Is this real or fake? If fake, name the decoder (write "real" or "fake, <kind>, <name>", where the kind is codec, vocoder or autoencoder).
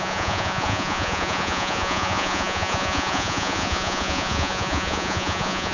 fake, vocoder, Vocos